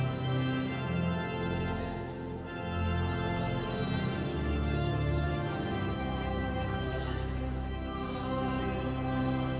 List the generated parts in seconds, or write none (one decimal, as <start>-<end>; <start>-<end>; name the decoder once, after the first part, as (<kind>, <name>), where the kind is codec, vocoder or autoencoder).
4.3-8.6 (autoencoder, DAC-VAE)